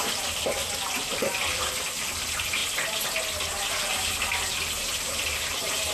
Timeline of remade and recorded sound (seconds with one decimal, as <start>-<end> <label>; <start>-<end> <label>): 0.0-2.6 remade; 2.6-3.7 recorded; 3.7-5.9 remade